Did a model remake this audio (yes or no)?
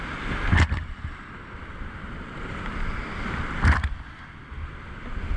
no